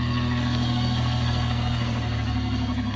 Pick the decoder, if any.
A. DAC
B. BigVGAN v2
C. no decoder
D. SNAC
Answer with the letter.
D